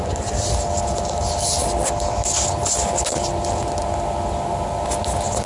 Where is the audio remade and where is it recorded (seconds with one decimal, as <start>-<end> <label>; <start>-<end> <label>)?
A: 0.0-5.5 recorded